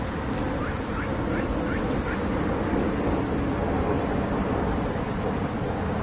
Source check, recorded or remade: recorded